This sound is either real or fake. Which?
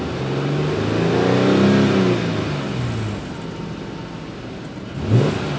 real